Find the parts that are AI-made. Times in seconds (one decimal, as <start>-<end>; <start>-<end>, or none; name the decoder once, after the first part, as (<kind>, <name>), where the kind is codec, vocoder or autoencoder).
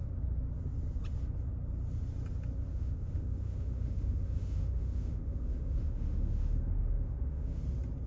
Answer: 2.7-7.6 (autoencoder, DAC-VAE)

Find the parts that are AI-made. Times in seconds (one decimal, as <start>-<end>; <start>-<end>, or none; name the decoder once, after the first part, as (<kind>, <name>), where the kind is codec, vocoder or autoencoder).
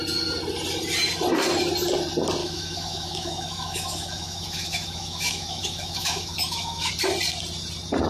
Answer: 2.4-6.9 (autoencoder, DAC-VAE)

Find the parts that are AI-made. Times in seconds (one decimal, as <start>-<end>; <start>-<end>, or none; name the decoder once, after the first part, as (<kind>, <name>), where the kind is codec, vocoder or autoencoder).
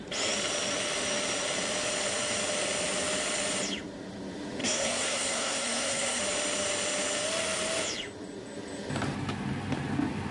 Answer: 4.6-6.2 (codec, SNAC)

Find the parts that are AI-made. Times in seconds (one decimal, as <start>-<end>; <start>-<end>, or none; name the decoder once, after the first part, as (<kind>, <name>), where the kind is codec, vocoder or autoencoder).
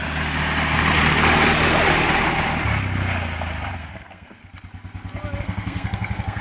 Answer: 3.8-4.4 (codec, SNAC); 5.4-6.4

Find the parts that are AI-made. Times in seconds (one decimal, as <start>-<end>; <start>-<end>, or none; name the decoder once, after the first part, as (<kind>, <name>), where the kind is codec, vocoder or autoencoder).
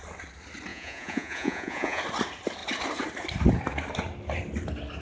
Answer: 0.7-2.0 (vocoder, Vocos)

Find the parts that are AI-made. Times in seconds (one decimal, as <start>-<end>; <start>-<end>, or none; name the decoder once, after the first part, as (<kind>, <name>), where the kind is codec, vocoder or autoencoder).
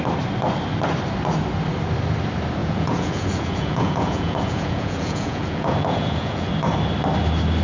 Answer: 2.6-6.5 (vocoder, Vocos)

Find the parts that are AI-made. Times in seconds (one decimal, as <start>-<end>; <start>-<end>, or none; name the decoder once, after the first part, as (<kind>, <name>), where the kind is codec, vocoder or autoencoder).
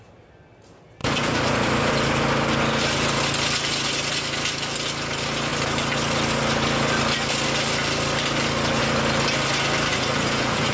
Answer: 1.0-1.9 (vocoder, Vocos); 9.9-10.7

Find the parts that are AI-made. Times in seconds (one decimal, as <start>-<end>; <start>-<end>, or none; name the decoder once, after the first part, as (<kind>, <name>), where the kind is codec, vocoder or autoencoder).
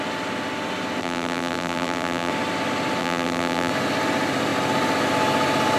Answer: 1.0-2.3 (vocoder, BigVGAN v2); 3.0-3.7